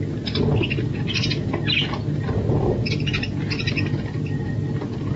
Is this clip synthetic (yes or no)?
no